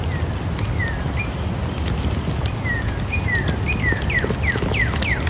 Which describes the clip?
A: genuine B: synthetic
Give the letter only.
A